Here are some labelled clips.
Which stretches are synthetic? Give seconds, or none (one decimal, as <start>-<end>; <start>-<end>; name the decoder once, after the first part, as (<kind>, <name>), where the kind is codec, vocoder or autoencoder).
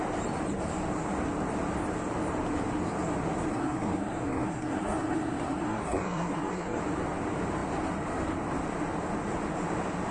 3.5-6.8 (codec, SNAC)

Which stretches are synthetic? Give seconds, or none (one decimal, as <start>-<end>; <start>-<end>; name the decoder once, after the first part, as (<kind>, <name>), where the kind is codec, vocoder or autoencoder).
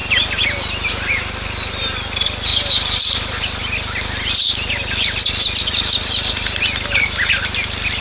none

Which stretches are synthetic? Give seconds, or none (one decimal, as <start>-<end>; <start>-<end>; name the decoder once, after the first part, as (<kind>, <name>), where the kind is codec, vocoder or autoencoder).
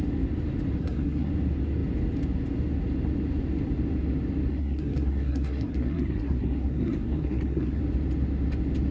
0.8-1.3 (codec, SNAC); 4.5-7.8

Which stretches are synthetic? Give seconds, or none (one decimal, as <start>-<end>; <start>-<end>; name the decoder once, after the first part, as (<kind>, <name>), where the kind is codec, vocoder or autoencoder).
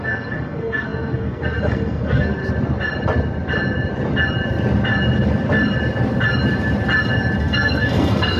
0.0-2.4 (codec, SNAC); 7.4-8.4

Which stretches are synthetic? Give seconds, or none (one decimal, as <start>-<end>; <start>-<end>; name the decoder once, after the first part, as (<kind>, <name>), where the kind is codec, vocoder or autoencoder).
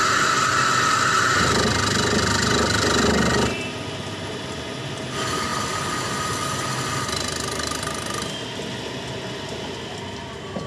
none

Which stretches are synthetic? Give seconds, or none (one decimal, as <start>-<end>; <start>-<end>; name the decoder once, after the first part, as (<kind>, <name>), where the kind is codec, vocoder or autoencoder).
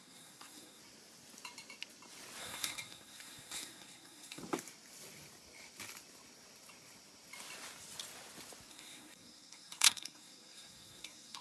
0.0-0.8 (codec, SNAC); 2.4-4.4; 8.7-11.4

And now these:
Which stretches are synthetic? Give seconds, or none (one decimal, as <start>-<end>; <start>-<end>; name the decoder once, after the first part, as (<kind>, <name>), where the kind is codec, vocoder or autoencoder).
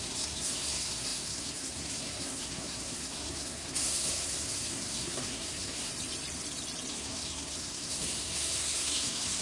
0.0-5.9 (codec, SNAC); 6.9-9.4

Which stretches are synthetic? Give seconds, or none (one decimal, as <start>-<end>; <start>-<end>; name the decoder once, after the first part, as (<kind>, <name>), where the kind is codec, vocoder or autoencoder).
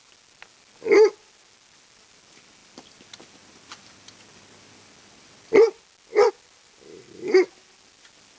none